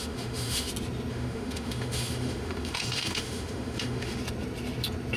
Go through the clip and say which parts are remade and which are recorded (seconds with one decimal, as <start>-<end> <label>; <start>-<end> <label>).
0.0-0.7 remade; 0.7-1.1 recorded; 1.1-4.2 remade; 4.2-5.2 recorded